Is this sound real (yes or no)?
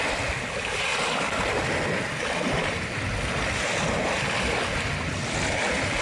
yes